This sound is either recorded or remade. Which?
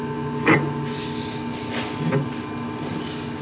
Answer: recorded